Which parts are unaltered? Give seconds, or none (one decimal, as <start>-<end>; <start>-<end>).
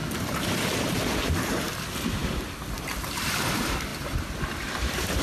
0.0-1.3